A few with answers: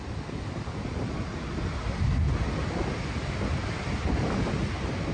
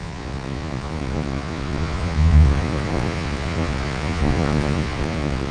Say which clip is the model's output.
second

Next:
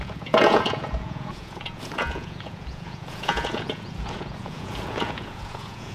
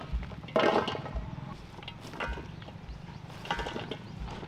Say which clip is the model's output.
first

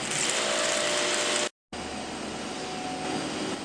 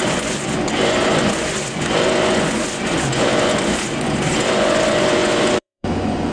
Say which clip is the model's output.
second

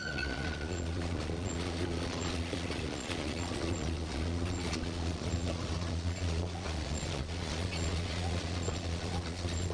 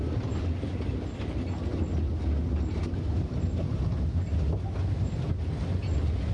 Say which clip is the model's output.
first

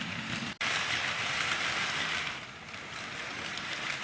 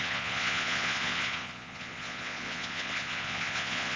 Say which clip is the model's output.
second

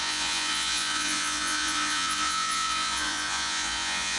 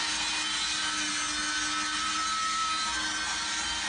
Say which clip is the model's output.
first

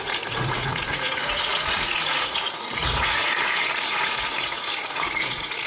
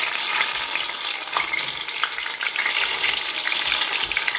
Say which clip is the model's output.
first